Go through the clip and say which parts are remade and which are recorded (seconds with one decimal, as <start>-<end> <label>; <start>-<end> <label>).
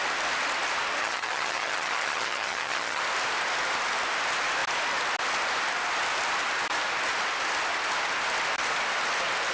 0.0-1.0 recorded; 1.0-3.0 remade; 3.0-9.5 recorded